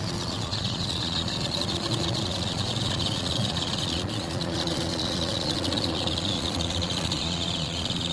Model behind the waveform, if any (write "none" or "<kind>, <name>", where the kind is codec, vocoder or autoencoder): vocoder, Vocos